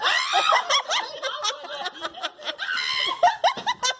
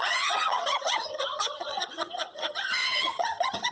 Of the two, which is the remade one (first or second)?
second